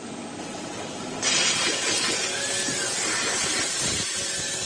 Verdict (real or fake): real